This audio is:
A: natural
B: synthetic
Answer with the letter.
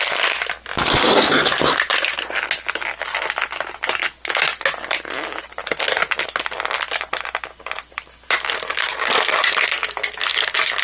A